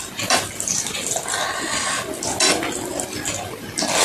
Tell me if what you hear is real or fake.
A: real